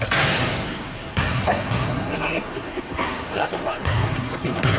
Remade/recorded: remade